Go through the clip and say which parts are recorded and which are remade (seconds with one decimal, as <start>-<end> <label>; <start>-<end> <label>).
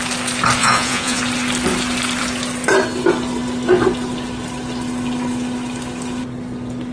0.0-0.6 recorded; 0.6-1.2 remade; 1.2-6.9 recorded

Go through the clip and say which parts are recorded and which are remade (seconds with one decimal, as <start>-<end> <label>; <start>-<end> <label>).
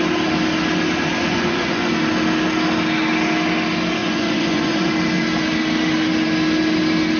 0.0-1.1 recorded; 1.1-1.9 remade; 1.9-4.0 recorded; 4.0-4.9 remade; 4.9-7.2 recorded